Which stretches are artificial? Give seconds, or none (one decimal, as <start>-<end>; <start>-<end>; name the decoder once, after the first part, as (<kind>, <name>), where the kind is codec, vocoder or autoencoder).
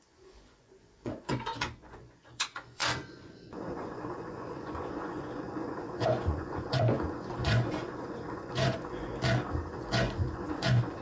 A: 0.0-9.1 (vocoder, Vocos); 9.7-11.0